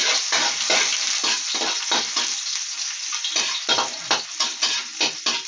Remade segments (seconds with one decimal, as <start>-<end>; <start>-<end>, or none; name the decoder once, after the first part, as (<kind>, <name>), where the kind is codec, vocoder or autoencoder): none